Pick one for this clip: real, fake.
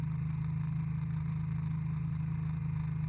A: real